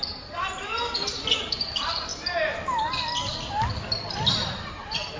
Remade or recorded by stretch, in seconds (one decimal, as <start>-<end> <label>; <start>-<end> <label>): 0.0-0.7 remade; 0.7-1.5 recorded; 1.5-2.1 remade; 2.1-4.3 recorded; 4.3-5.2 remade